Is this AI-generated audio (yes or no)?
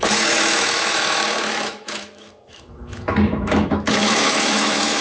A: yes